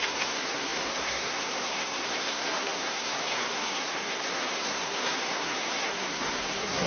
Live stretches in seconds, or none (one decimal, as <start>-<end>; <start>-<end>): none